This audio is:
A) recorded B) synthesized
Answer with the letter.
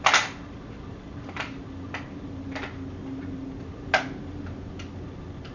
A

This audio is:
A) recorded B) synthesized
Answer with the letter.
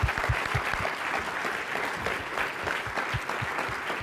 A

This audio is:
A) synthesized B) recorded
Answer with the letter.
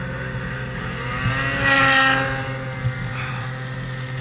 B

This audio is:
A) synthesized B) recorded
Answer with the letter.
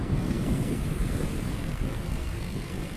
A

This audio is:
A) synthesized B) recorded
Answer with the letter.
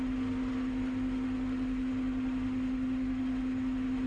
B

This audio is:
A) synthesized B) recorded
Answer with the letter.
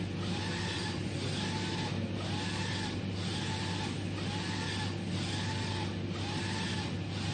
B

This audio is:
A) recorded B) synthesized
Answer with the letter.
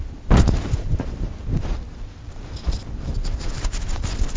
A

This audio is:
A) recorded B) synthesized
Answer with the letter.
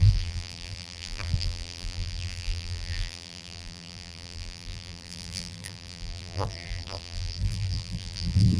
B